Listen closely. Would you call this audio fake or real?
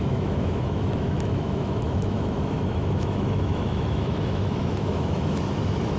fake